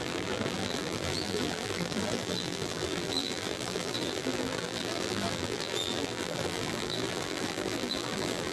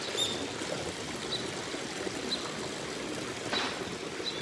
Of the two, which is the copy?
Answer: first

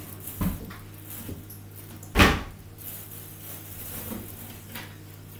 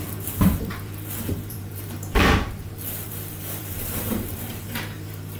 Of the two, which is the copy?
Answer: second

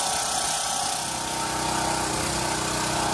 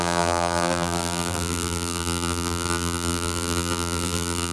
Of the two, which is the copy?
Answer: second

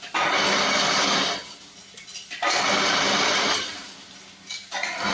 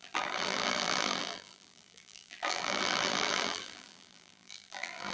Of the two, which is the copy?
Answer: second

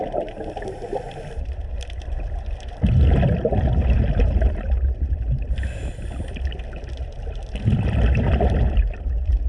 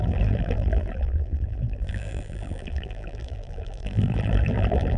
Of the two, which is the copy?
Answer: second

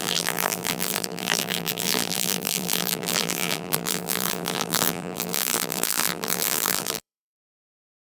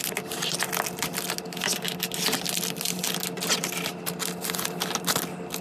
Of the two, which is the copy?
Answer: first